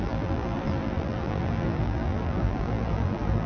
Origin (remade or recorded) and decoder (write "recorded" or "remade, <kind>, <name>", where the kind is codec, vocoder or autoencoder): remade, vocoder, BigVGAN v2